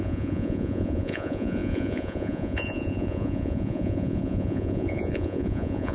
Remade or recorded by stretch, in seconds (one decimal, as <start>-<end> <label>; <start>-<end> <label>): 0.0-5.9 remade